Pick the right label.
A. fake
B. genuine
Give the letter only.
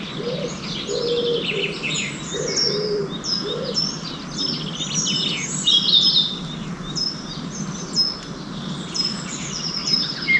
B